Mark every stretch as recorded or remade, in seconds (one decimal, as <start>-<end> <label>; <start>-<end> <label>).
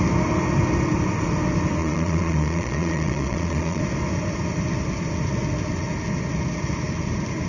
0.0-1.8 recorded; 1.8-3.8 remade; 3.8-7.5 recorded